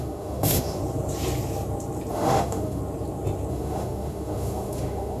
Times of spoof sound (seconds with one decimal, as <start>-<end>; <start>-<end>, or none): 0.0-0.8; 2.1-2.8; 3.5-5.2